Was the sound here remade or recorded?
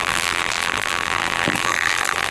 remade